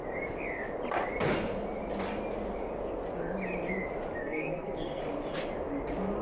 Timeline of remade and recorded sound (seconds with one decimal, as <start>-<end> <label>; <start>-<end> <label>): 0.0-4.2 recorded; 4.2-5.0 remade; 5.0-6.2 recorded